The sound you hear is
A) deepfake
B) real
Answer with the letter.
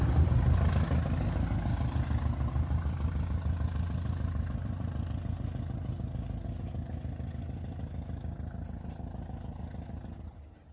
B